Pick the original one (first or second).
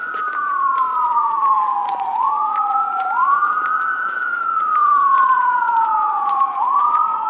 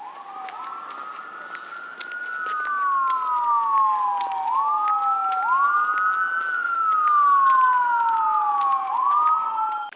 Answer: second